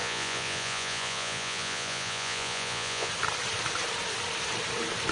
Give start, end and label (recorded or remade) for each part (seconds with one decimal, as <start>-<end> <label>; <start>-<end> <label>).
0.0-3.1 remade; 3.1-5.1 recorded